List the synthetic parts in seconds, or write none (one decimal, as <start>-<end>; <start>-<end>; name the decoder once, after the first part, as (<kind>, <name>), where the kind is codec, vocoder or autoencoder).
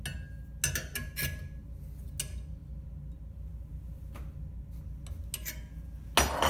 none